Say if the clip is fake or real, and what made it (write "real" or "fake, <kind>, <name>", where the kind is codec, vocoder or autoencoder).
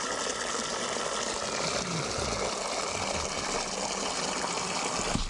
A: real